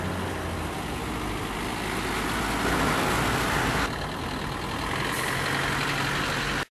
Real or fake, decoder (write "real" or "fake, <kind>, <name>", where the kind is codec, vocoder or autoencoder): real